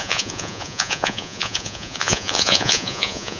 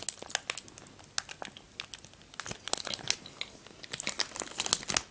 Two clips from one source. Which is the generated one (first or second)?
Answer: first